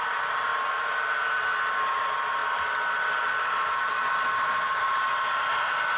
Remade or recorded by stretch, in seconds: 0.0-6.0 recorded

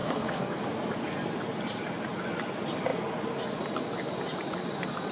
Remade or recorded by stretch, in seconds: 0.0-0.6 remade; 0.6-5.1 recorded

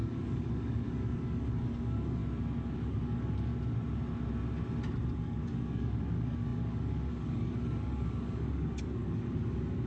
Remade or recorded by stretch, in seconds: 0.0-2.2 remade; 2.2-2.9 recorded; 2.9-3.5 remade; 3.5-5.2 recorded; 5.2-9.9 remade

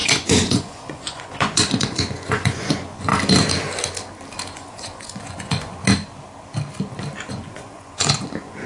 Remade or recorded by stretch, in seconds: 0.0-3.1 remade; 3.1-4.5 recorded; 4.5-5.8 remade; 5.8-7.3 recorded; 7.3-8.7 remade

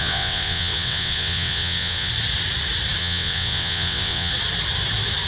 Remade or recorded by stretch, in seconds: 0.0-2.1 remade; 2.1-3.0 recorded; 3.0-4.3 remade; 4.3-5.3 recorded

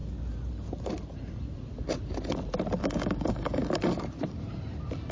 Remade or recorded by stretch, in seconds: 0.0-2.8 recorded; 2.8-3.7 remade; 3.7-5.1 recorded

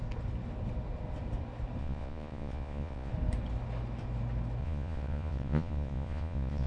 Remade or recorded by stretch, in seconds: 0.0-1.8 recorded; 1.8-3.1 remade; 3.1-4.6 recorded; 4.6-6.7 remade